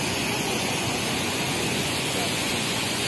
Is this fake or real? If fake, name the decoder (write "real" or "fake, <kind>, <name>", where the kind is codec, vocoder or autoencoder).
fake, vocoder, Vocos